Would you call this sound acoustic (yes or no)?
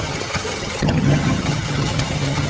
no